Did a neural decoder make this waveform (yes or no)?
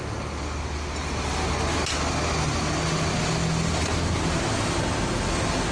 no